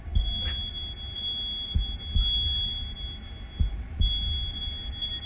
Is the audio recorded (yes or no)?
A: yes